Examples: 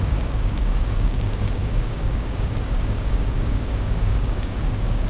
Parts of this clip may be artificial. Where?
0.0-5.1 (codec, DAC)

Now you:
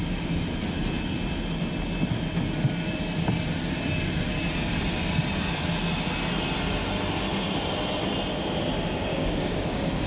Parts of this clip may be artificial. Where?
9.1-10.1 (codec, DAC)

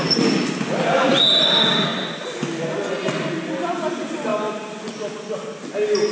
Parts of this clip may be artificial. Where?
none

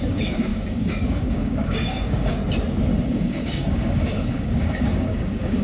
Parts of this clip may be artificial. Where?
0.0-2.4 (codec, DAC); 3.1-5.6

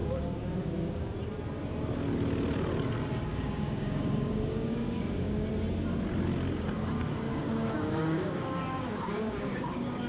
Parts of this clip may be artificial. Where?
0.0-1.1 (codec, DAC); 3.3-5.5; 7.3-10.1